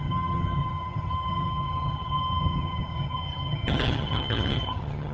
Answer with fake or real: fake